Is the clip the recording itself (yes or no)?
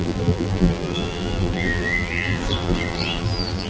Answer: no